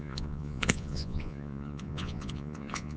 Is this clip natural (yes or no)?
no